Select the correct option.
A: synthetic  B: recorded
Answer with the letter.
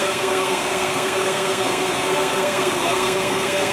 A